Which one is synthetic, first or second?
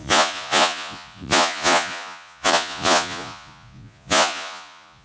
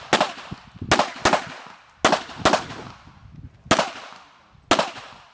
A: first